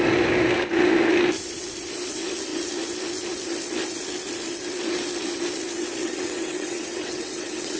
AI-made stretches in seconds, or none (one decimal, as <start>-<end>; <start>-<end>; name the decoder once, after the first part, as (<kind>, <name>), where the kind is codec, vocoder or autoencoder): 6.0-7.8 (vocoder, WaveNeXt)